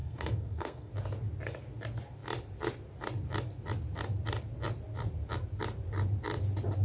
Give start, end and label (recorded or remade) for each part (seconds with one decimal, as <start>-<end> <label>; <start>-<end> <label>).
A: 0.0-0.9 remade; 0.9-6.8 recorded